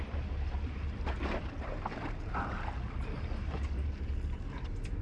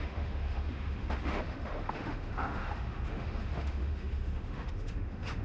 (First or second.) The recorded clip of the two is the first